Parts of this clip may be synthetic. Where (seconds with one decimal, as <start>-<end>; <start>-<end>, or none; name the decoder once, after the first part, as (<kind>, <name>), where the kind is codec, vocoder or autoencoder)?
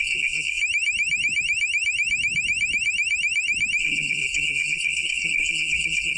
0.0-0.6 (codec, SNAC); 3.8-6.2